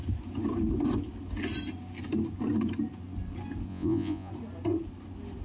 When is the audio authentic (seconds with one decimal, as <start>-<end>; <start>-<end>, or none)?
0.0-3.7; 4.3-5.4